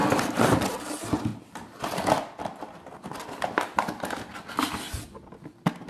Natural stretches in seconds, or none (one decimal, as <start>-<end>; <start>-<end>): 0.0-5.9